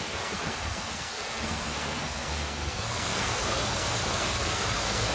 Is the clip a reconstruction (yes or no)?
yes